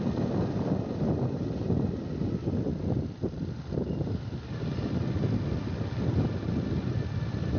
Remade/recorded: recorded